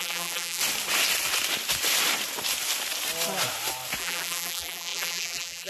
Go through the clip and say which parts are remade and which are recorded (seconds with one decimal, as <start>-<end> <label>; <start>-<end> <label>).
0.0-0.6 remade; 0.6-4.0 recorded; 4.0-5.7 remade